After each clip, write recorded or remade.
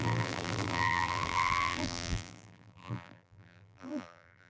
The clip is remade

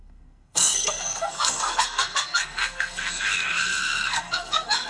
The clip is remade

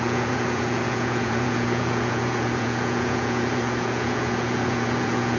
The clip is remade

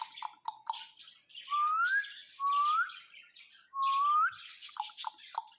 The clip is recorded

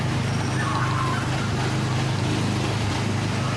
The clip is recorded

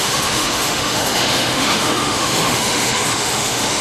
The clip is remade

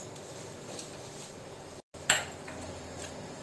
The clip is recorded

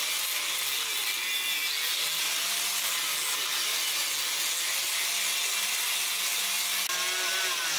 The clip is recorded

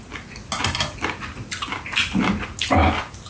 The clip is recorded